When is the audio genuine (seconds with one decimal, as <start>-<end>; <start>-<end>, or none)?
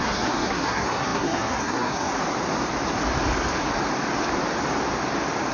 2.1-5.5